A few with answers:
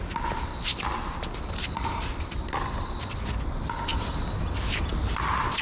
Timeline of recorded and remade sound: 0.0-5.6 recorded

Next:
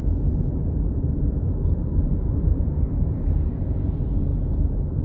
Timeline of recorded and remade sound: 0.0-0.6 recorded; 0.6-3.6 remade; 3.6-5.0 recorded

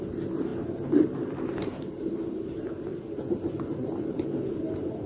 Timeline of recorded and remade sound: 0.0-5.1 remade

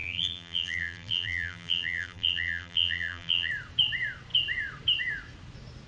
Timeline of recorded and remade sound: 0.0-3.5 remade; 3.5-5.9 recorded

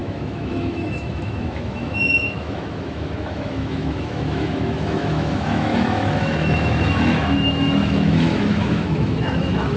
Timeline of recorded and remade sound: 0.0-9.8 remade

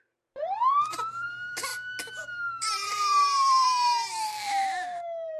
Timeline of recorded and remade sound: 0.0-1.7 remade; 1.7-2.2 recorded; 2.2-5.4 remade

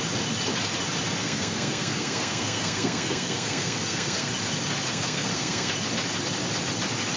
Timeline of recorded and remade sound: 0.0-1.2 recorded; 1.2-4.3 remade; 4.3-4.9 recorded; 4.9-5.7 remade; 5.7-7.2 recorded